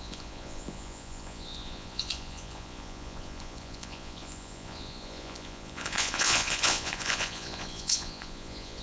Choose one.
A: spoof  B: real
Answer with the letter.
A